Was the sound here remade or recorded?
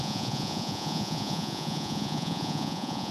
remade